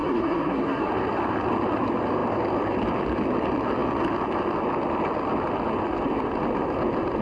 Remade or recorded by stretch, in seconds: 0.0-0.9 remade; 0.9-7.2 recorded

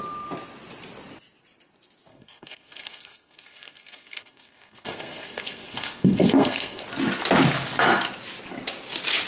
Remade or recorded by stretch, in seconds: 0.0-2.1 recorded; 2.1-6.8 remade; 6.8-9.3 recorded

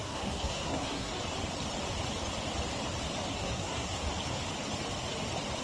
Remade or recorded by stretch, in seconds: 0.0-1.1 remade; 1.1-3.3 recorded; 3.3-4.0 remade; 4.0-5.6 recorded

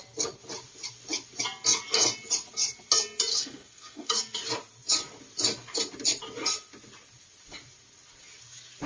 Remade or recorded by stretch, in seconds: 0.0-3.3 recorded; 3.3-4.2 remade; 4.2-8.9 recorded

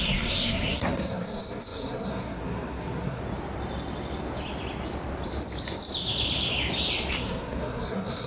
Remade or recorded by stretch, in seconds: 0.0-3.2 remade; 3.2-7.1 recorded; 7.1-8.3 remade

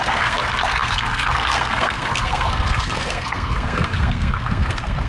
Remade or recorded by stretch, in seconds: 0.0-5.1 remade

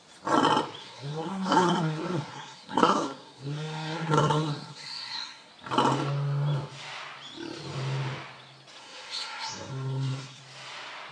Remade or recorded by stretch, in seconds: 0.0-0.8 recorded; 0.8-5.5 remade; 5.5-8.8 recorded; 8.8-10.4 remade; 10.4-11.1 recorded

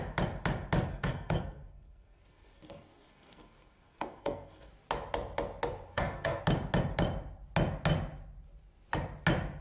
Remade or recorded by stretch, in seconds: 0.0-0.9 recorded; 0.9-4.7 remade; 4.7-5.9 recorded; 5.9-6.4 remade; 6.4-9.6 recorded